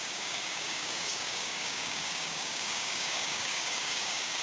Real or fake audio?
fake